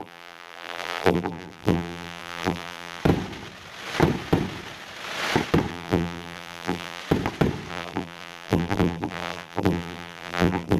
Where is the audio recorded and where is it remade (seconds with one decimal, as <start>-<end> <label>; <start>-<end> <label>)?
0.0-3.0 remade; 3.0-5.7 recorded; 5.7-7.0 remade; 7.0-7.7 recorded; 7.7-10.8 remade